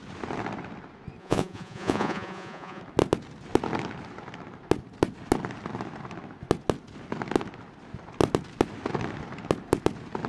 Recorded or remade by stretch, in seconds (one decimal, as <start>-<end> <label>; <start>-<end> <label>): 0.0-1.2 recorded; 1.2-2.8 remade; 2.8-10.3 recorded

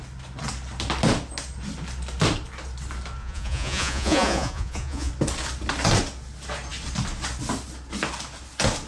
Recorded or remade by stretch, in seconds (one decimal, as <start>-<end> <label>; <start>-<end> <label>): 0.0-3.2 recorded; 3.2-5.1 remade; 5.1-8.9 recorded

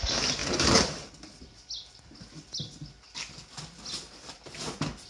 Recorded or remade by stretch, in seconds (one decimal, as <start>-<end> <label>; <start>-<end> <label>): 0.0-5.1 recorded

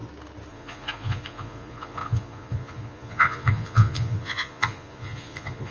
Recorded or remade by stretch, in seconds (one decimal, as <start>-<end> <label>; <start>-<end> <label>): 0.0-0.5 recorded; 0.5-5.7 remade

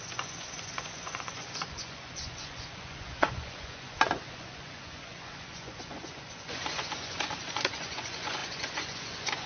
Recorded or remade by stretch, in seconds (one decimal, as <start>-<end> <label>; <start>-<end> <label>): 0.0-9.5 remade